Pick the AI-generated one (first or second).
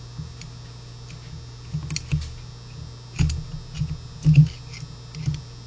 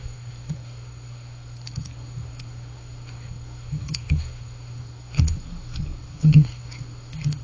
second